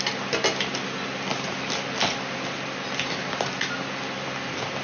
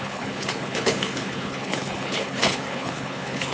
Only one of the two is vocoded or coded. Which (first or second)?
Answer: second